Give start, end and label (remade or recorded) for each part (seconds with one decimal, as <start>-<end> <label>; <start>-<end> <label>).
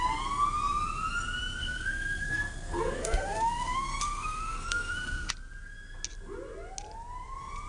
0.0-1.6 recorded; 1.6-5.3 remade; 5.3-7.7 recorded